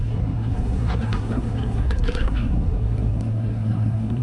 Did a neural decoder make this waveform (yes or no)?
yes